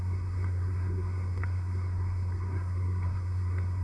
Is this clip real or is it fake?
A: fake